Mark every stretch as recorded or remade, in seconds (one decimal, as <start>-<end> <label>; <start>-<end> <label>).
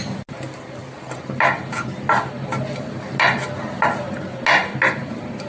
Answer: 0.0-5.5 recorded